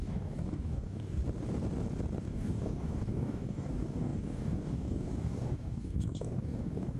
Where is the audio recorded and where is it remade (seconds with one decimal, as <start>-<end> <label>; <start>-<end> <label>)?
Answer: 0.0-1.2 remade; 1.2-2.2 recorded; 2.2-7.0 remade